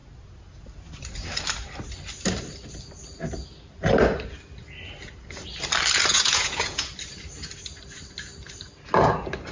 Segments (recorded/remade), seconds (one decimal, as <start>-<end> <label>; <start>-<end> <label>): 0.0-6.1 recorded; 6.1-6.9 remade; 6.9-9.5 recorded